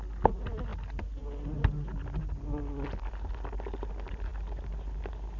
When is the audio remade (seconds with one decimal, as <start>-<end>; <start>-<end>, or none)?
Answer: none